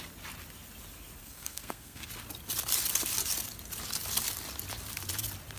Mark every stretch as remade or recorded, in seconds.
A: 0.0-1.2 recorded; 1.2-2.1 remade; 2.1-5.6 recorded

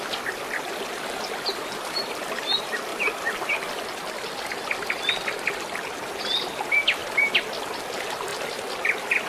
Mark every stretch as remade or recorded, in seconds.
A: 0.0-9.3 recorded

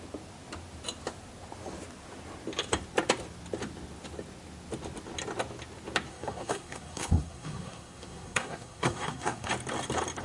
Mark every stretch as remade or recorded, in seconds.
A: 0.0-6.1 recorded; 6.1-9.5 remade; 9.5-10.2 recorded

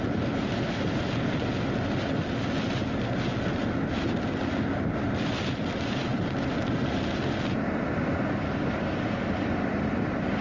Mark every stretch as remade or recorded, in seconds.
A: 0.0-10.4 recorded

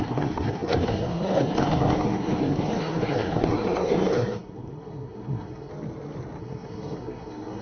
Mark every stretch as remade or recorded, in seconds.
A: 0.0-5.7 remade; 5.7-6.4 recorded; 6.4-7.6 remade

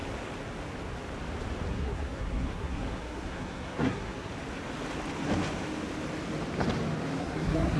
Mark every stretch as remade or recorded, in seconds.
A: 0.0-1.7 recorded; 1.7-4.3 remade; 4.3-7.2 recorded; 7.2-7.8 remade

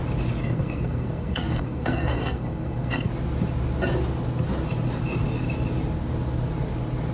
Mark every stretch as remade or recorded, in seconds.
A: 0.0-0.4 recorded; 0.4-3.1 remade; 3.1-7.1 recorded

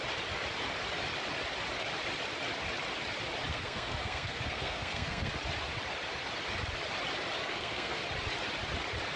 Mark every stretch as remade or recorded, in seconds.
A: 0.0-3.5 recorded; 3.5-5.3 remade; 5.3-7.4 recorded; 7.4-8.0 remade; 8.0-9.2 recorded